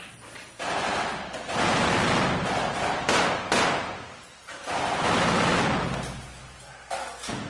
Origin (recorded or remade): recorded